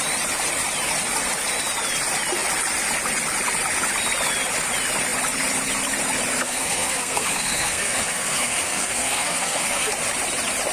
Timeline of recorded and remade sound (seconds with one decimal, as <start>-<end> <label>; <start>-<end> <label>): 0.0-6.4 recorded; 6.4-9.9 remade; 9.9-10.7 recorded